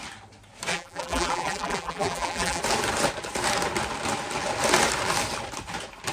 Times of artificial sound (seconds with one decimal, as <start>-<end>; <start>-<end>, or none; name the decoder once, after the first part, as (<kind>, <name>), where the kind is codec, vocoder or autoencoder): 0.7-2.6 (vocoder, BigVGAN v2)